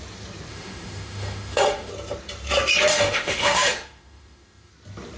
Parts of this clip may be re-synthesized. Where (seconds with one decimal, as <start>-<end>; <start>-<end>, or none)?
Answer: 0.5-1.9; 2.9-4.7